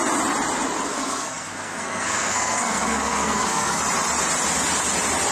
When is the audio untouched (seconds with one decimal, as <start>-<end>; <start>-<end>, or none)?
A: 0.0-0.9; 3.8-5.3